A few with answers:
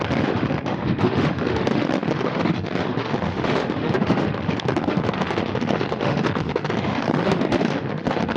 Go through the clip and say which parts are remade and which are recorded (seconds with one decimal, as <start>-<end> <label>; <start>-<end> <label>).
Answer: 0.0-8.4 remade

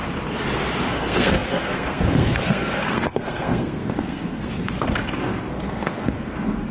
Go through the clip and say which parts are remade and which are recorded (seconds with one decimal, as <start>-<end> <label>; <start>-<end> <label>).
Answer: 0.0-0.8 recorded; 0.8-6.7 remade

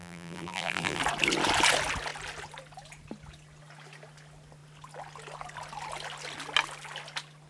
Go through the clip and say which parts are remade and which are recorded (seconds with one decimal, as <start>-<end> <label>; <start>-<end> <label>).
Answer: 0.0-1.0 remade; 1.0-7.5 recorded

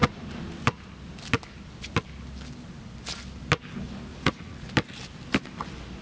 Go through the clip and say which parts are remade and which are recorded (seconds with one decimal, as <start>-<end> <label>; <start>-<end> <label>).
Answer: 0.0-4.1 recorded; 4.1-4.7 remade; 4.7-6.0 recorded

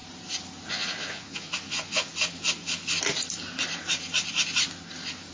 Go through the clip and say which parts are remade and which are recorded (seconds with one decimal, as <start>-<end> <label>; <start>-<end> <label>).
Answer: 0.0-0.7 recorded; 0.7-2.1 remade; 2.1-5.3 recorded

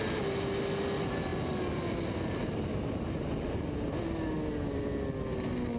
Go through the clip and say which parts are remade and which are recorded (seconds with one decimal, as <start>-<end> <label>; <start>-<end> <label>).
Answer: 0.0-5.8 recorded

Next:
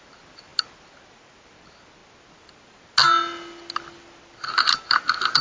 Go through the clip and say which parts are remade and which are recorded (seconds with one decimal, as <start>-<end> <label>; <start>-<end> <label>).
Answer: 0.0-5.4 recorded